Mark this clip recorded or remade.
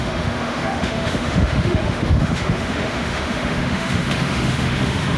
remade